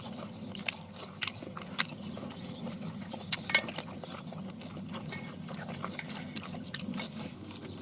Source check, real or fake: real